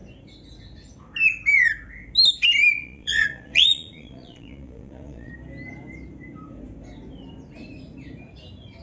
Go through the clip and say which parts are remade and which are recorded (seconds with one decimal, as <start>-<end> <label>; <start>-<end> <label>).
0.0-2.8 recorded; 2.8-5.3 remade; 5.3-8.8 recorded